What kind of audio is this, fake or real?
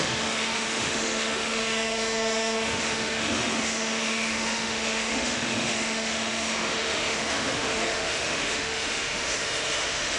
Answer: fake